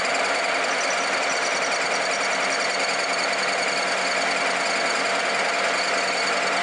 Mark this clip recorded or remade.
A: recorded